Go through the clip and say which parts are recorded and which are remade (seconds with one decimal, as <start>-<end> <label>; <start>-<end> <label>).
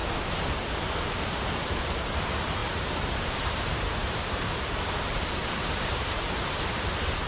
0.0-2.6 recorded; 2.6-6.2 remade; 6.2-7.3 recorded